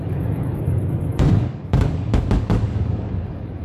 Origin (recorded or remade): remade